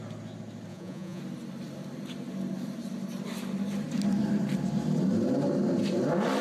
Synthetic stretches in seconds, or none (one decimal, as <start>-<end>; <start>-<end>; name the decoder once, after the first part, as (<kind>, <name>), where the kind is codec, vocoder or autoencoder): 0.7-1.2 (vocoder, Vocos)